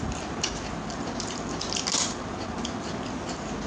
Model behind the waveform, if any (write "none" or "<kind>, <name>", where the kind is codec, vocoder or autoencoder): none